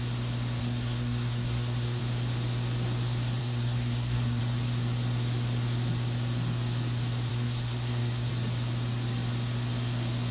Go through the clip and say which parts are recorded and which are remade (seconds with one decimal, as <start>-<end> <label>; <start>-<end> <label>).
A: 0.0-0.6 recorded; 0.6-2.0 remade; 2.0-3.4 recorded; 3.4-4.4 remade; 4.4-7.3 recorded; 7.3-8.3 remade; 8.3-10.3 recorded

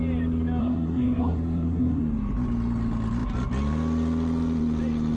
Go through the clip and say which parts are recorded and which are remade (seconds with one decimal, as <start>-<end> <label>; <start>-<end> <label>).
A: 0.0-0.6 recorded; 0.6-2.0 remade; 2.0-5.2 recorded